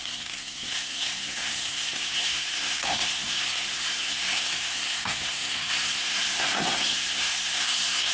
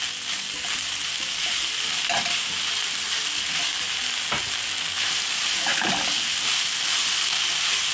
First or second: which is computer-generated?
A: first